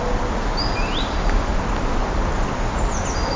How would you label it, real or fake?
real